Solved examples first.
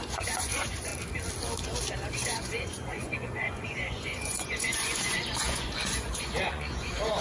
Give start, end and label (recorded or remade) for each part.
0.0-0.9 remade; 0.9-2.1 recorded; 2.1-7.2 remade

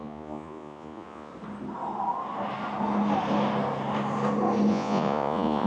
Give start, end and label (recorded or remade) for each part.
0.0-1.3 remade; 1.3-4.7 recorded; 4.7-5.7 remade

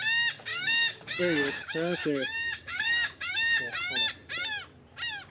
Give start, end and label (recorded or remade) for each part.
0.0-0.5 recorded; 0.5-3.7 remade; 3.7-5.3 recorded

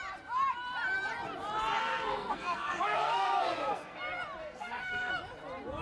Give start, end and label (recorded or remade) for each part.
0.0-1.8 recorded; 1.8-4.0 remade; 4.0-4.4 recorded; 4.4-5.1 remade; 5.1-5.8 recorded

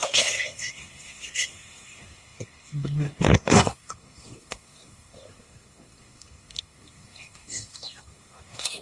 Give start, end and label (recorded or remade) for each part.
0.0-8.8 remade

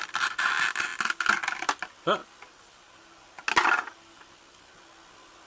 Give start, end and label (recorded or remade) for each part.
0.0-5.5 recorded

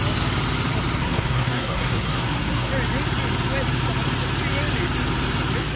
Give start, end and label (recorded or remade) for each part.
0.0-1.0 recorded; 1.0-2.7 remade; 2.7-5.8 recorded